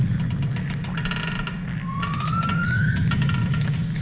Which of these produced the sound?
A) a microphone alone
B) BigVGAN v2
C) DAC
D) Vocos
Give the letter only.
A